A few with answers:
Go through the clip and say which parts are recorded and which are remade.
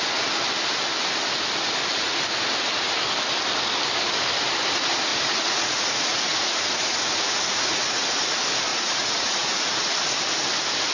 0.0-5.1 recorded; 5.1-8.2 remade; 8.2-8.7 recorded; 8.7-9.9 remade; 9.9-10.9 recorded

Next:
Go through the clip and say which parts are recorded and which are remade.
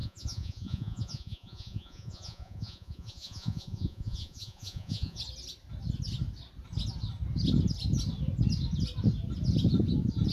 0.0-5.2 remade; 5.2-10.3 recorded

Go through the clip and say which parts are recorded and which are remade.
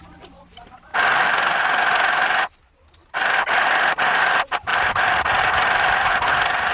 0.0-6.7 recorded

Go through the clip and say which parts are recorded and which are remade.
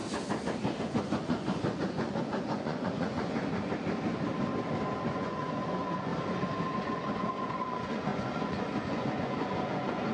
0.0-0.8 recorded; 0.8-3.4 remade; 3.4-5.0 recorded; 5.0-6.1 remade; 6.1-6.8 recorded; 6.8-10.1 remade